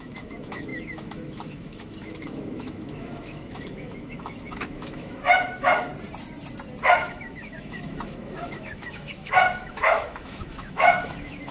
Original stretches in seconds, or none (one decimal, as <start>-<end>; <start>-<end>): 5.9-6.8